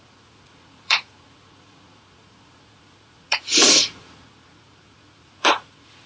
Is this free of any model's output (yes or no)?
no